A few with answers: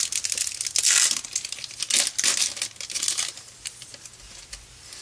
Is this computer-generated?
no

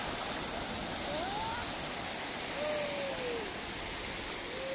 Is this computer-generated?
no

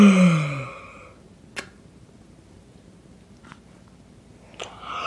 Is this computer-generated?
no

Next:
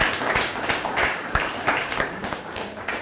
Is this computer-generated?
yes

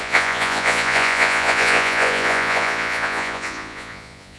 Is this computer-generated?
yes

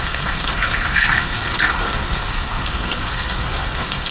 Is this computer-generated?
yes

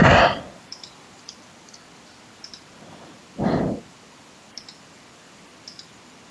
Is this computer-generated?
yes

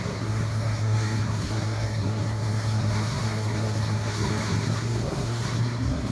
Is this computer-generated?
yes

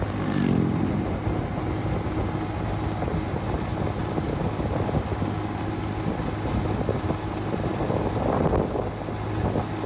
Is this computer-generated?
no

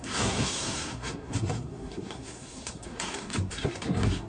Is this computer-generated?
yes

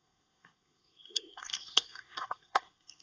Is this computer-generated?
yes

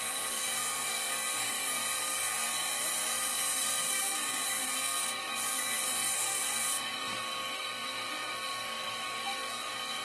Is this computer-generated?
yes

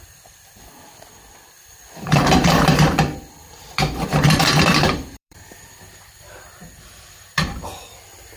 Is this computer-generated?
yes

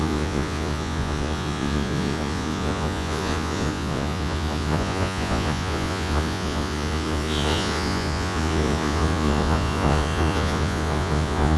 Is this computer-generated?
yes